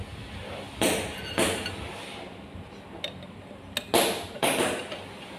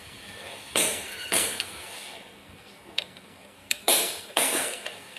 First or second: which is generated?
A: second